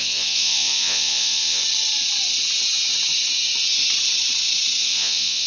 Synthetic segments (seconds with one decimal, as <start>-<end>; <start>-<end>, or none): 0.0-1.6; 4.8-5.5